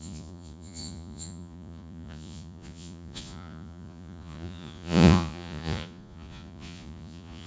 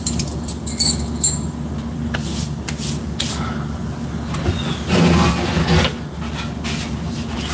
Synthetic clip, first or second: first